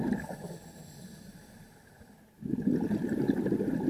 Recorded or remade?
recorded